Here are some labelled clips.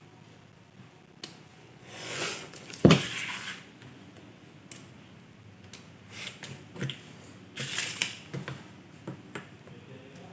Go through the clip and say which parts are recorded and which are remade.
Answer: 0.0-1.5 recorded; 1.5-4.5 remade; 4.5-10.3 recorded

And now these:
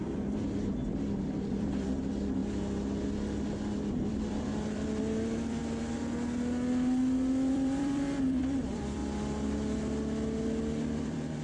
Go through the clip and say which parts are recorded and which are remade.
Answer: 0.0-2.4 remade; 2.4-4.1 recorded; 4.1-5.6 remade; 5.6-7.5 recorded; 7.5-9.0 remade; 9.0-10.8 recorded; 10.8-11.4 remade

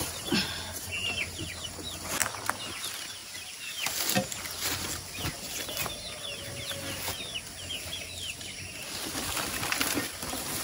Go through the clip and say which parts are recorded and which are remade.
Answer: 0.0-10.6 recorded

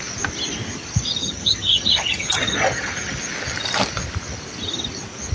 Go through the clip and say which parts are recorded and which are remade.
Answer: 0.0-1.2 recorded; 1.2-3.2 remade; 3.2-5.3 recorded

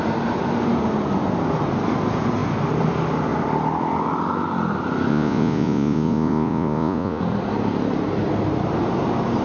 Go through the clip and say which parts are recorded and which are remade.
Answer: 0.0-5.1 recorded; 5.1-7.2 remade; 7.2-9.4 recorded

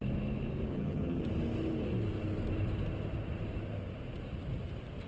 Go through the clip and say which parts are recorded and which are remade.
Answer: 0.0-0.7 recorded; 0.7-1.2 remade; 1.2-5.1 recorded

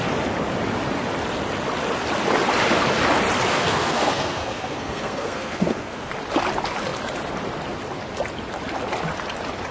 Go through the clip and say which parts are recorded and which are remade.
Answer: 0.0-3.5 recorded; 3.5-6.1 remade; 6.1-9.7 recorded

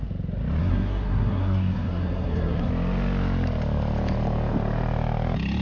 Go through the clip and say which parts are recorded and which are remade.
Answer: 0.0-0.6 recorded; 0.6-2.7 remade; 2.7-5.6 recorded